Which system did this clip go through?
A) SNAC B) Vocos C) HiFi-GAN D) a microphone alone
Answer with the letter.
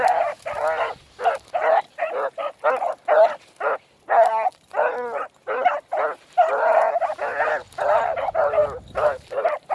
D